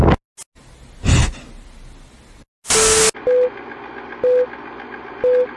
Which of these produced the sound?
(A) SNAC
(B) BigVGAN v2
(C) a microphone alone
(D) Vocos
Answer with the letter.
C